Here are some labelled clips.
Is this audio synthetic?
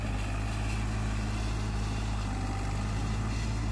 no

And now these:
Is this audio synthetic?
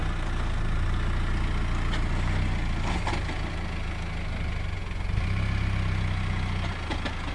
no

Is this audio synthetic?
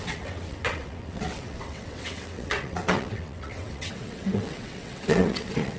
yes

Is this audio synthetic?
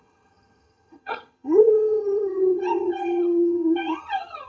yes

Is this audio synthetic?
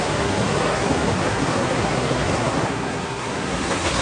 yes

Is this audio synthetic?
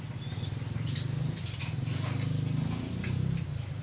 no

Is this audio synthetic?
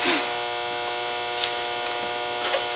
no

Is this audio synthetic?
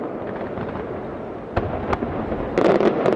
no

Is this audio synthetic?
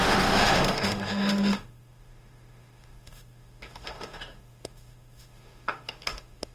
yes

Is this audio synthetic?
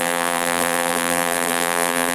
yes